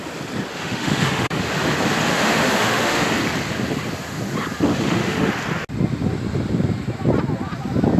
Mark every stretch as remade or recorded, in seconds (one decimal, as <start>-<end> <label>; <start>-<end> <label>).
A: 0.0-0.5 recorded; 0.5-1.5 remade; 1.5-2.1 recorded; 2.1-3.1 remade; 3.1-4.7 recorded; 4.7-5.3 remade; 5.3-8.0 recorded